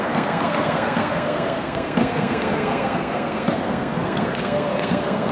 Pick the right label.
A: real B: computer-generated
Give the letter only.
B